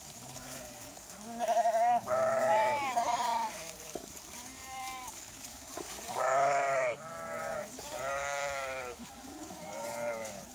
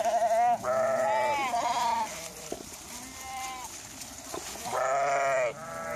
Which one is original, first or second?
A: second